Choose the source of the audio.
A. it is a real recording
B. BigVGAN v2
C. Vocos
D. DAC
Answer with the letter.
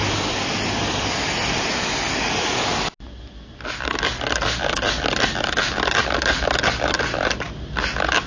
A